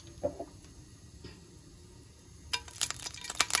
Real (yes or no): yes